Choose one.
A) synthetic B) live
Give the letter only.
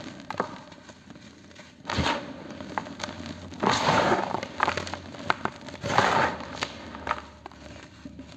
B